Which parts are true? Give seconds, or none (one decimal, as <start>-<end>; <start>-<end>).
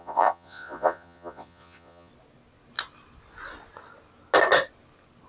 2.1-5.3